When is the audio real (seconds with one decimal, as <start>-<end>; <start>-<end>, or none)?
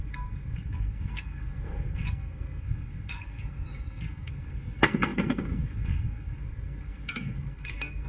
none